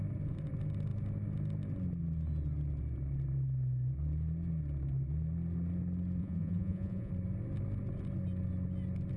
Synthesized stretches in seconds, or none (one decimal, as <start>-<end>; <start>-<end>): 6.2-7.1